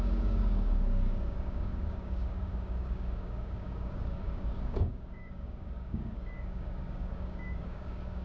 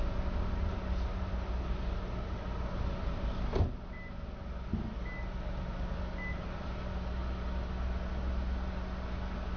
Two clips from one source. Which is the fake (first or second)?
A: first